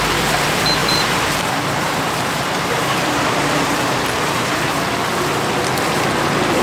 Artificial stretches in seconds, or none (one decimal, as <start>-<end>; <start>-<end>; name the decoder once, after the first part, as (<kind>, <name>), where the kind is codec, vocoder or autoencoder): 0.8-4.8 (vocoder, BigVGAN v2)